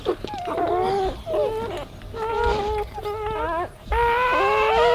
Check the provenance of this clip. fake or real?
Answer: real